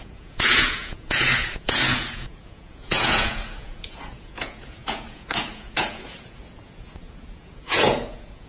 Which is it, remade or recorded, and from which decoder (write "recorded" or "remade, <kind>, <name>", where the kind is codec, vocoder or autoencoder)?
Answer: remade, vocoder, Vocos